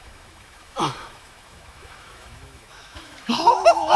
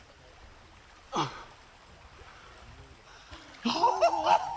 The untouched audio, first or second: second